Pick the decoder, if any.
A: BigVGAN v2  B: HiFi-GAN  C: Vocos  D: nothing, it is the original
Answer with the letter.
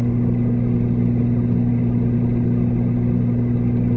D